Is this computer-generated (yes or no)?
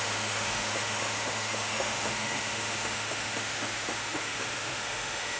yes